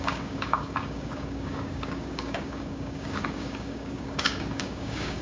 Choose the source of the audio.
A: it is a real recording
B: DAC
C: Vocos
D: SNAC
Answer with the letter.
B